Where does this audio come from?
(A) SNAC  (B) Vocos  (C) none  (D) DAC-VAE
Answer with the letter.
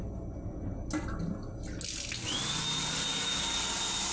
C